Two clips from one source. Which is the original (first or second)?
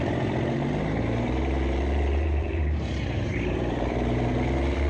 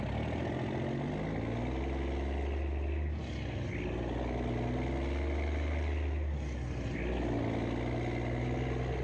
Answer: second